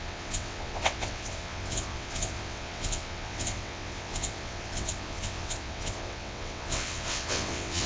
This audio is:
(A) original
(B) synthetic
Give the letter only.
B